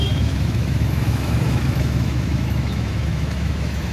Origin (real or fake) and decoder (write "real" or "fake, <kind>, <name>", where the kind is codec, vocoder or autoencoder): fake, autoencoder, DAC-VAE